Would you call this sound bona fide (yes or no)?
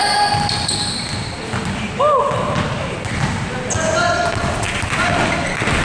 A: yes